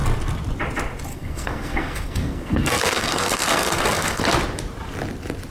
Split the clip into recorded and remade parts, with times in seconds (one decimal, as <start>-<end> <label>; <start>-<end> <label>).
0.0-1.1 recorded; 1.1-4.2 remade; 4.2-5.5 recorded